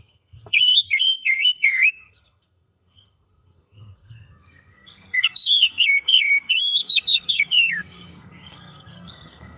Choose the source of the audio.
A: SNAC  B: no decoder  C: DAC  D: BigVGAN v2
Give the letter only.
A